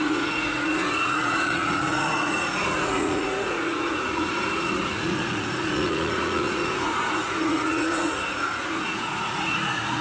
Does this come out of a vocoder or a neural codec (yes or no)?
yes